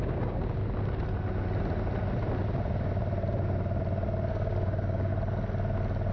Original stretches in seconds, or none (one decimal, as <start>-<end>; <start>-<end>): 0.6-4.3; 5.1-6.1